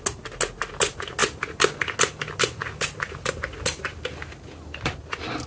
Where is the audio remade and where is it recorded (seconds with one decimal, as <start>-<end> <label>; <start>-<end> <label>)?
0.0-5.5 recorded